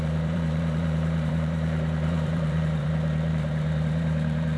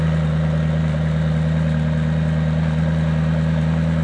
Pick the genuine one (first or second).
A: second